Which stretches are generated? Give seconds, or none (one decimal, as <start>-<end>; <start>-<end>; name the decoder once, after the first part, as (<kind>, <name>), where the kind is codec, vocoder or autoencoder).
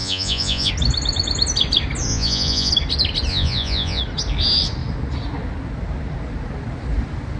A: 0.0-0.7 (vocoder, Vocos); 2.1-2.7; 3.3-4.0